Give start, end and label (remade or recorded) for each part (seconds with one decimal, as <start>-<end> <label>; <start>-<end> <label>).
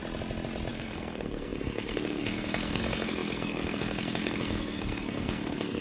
0.0-0.7 recorded; 0.7-5.8 remade